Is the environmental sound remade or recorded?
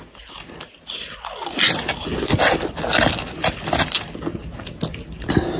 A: recorded